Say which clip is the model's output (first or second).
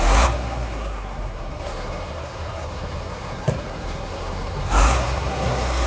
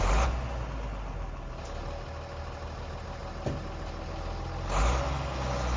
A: first